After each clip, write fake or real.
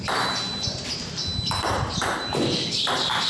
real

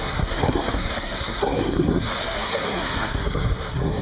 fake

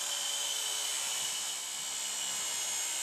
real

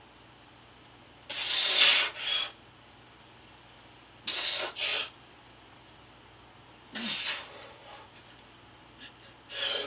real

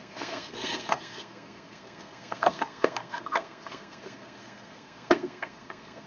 fake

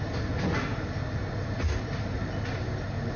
real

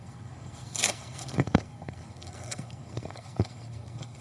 fake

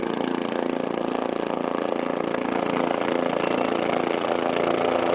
real